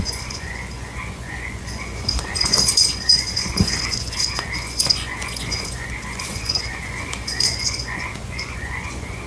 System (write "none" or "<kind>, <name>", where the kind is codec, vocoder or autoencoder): vocoder, Vocos